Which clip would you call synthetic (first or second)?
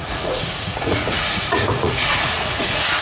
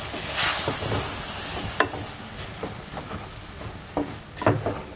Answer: first